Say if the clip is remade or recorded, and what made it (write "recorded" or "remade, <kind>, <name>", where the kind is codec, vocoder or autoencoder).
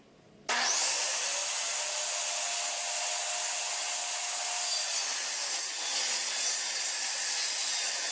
recorded